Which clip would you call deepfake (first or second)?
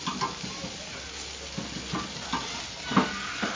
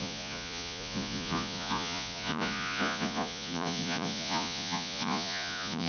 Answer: second